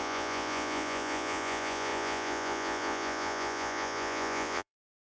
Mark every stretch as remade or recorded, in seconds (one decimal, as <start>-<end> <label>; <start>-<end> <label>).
0.0-5.1 remade